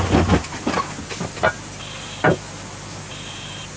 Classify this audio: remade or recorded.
recorded